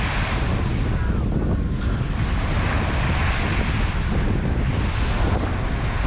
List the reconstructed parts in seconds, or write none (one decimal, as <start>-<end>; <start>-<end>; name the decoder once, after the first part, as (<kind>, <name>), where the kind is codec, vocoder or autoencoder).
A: none

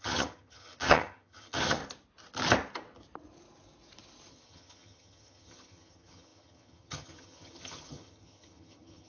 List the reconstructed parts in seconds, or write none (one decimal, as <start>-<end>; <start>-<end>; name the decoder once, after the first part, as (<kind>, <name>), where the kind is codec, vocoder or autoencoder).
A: 0.0-1.8 (vocoder, HiFi-GAN); 4.3-9.1

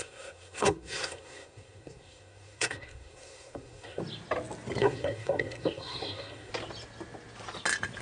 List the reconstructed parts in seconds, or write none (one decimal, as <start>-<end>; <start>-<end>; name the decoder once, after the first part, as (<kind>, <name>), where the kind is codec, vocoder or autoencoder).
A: 0.0-4.0 (codec, SNAC); 4.8-6.5